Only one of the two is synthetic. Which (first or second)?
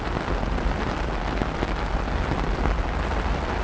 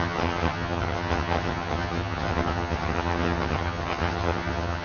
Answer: second